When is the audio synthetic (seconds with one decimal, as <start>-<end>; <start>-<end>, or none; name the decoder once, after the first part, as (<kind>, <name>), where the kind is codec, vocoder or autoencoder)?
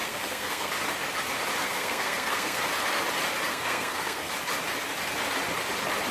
0.0-0.7 (codec, SNAC); 1.6-2.6; 3.5-4.3